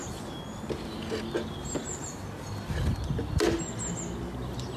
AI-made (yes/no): no